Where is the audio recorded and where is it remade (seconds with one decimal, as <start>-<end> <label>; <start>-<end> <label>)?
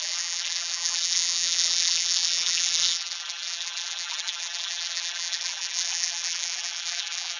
0.0-7.4 remade